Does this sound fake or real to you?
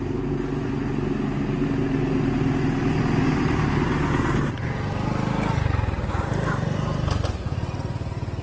real